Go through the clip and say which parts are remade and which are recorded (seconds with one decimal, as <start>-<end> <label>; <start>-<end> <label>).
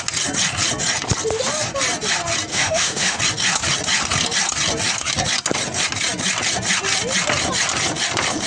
0.0-2.5 recorded; 2.5-3.2 remade; 3.2-8.5 recorded